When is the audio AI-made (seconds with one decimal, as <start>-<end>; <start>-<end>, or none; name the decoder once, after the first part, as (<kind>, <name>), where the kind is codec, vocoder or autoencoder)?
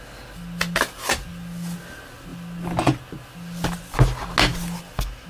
none